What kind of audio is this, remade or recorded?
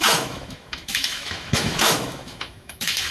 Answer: remade